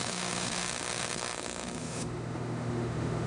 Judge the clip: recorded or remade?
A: remade